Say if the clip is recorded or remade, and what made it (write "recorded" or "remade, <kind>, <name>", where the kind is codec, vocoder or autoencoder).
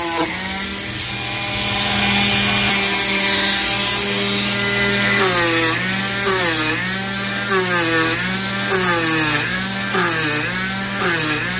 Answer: recorded